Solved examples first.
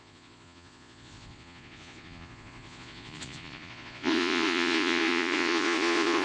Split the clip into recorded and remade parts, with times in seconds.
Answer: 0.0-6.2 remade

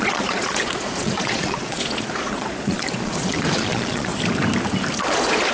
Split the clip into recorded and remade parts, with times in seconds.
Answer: 0.0-4.1 remade; 4.1-5.0 recorded; 5.0-5.5 remade

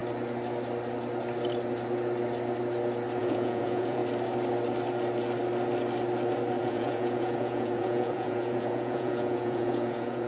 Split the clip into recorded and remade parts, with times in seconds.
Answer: 0.0-3.2 recorded; 3.2-4.0 remade; 4.0-6.6 recorded; 6.6-10.3 remade

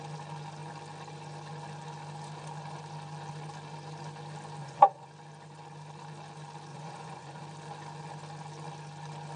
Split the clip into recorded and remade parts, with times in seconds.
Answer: 0.0-4.6 recorded; 4.6-5.1 remade; 5.1-6.7 recorded; 6.7-7.4 remade; 7.4-9.4 recorded